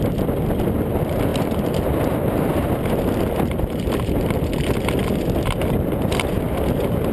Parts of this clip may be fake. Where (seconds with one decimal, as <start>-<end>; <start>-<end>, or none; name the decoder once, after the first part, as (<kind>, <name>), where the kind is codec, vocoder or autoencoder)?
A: none